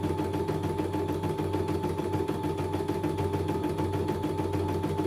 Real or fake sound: real